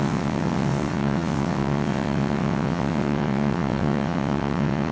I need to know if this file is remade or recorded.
remade